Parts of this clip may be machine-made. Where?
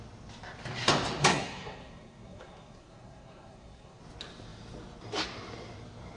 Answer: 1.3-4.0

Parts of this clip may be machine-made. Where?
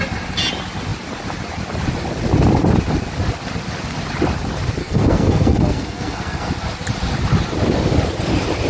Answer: 4.8-6.5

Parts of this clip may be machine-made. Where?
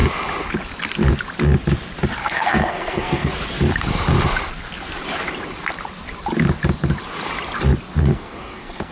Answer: 2.2-3.3; 8.0-8.9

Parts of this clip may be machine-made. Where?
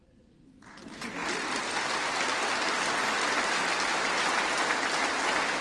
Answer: none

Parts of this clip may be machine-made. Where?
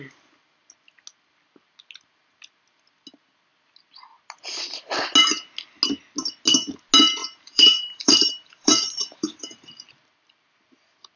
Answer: 7.2-9.9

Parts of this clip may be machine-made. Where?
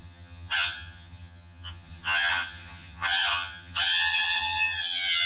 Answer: 0.0-5.3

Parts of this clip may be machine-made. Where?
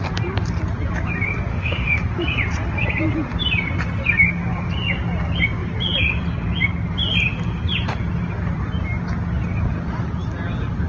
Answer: 1.5-2.0